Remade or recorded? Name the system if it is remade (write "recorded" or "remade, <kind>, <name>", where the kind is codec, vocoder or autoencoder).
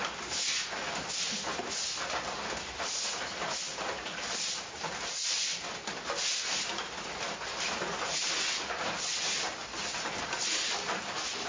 recorded